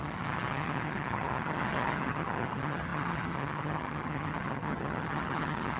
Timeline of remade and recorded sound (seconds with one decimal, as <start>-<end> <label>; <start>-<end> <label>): 0.0-5.8 remade